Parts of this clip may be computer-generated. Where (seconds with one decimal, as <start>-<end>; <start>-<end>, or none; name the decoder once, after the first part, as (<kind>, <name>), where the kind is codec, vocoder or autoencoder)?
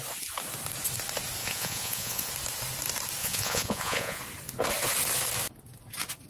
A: 1.4-2.3 (vocoder, Vocos); 3.2-4.2